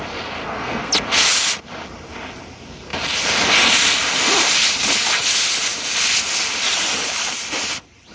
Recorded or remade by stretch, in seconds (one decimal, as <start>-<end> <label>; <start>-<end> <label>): 0.0-0.4 recorded; 0.4-0.9 remade; 0.9-8.1 recorded